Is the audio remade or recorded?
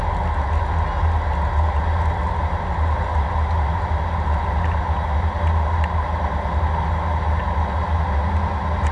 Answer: recorded